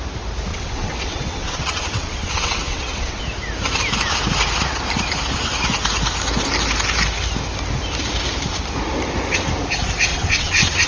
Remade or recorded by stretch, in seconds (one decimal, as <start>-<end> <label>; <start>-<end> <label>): 0.0-0.5 recorded; 0.5-3.2 remade; 3.2-10.1 recorded; 10.1-10.9 remade